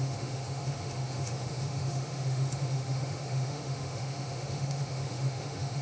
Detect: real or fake fake